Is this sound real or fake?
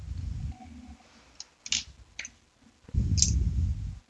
real